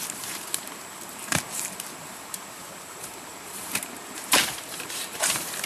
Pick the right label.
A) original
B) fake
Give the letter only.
B